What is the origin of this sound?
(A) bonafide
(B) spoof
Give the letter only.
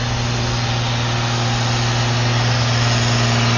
A